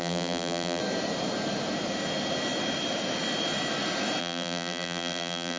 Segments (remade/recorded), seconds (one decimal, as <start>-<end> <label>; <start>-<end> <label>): 0.0-0.8 remade; 0.8-4.2 recorded; 4.2-5.6 remade